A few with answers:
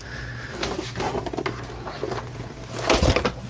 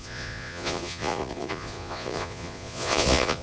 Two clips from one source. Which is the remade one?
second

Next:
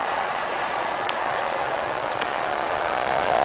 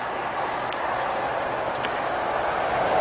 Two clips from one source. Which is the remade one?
first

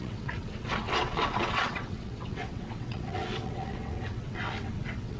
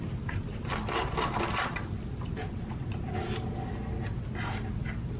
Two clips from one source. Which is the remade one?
first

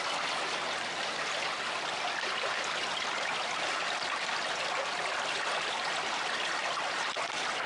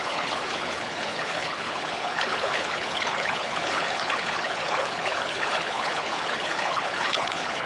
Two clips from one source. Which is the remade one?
second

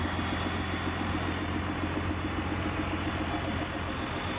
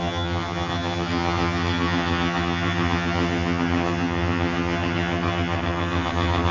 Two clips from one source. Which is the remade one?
second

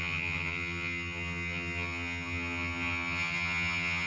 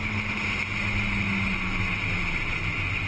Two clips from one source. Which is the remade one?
first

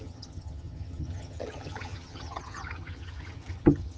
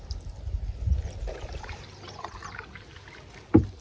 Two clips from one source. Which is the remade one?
first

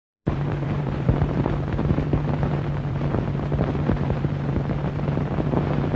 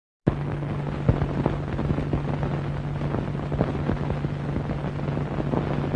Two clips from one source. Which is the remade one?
first